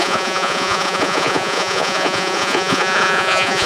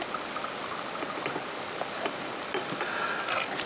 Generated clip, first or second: first